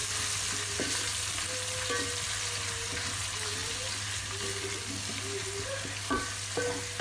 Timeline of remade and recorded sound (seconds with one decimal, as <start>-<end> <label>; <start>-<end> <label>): 0.0-7.0 recorded